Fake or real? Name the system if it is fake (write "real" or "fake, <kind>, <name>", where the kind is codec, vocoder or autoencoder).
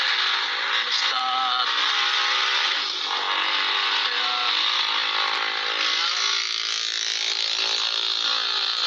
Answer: real